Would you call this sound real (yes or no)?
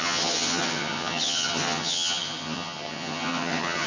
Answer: no